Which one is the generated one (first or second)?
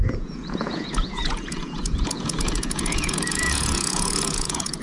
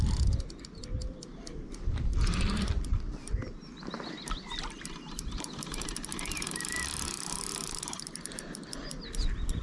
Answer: first